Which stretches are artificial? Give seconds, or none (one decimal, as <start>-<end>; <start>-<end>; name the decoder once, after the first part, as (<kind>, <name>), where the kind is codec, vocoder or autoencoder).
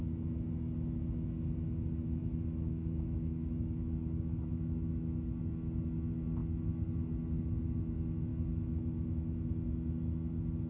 2.2-5.4 (autoencoder, DAC-VAE)